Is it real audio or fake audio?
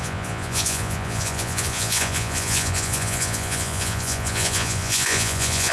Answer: fake